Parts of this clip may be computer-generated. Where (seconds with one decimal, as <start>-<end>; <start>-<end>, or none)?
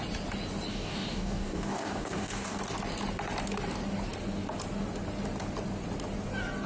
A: 0.7-2.6